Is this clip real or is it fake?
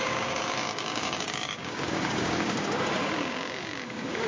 fake